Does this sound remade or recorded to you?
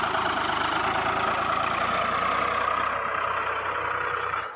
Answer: recorded